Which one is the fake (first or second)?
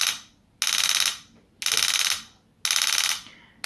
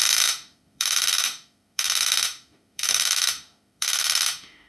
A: second